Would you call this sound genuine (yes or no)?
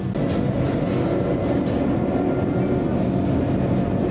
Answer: yes